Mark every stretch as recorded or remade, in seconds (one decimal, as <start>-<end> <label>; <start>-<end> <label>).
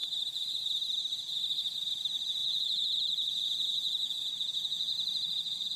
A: 0.0-2.4 recorded; 2.4-5.8 remade